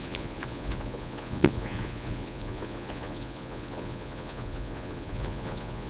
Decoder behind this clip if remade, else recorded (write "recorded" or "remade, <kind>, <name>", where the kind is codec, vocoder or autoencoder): remade, vocoder, Vocos